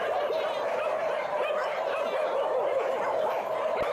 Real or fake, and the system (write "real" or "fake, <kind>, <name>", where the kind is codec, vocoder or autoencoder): fake, vocoder, BigVGAN v2